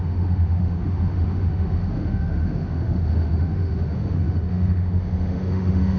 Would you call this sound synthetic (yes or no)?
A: yes